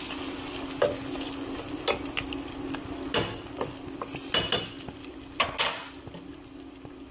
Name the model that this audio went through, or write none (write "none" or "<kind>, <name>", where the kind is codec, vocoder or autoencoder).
none